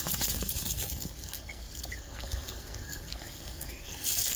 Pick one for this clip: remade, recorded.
remade